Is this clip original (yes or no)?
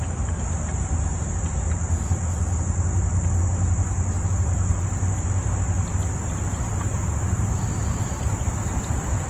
yes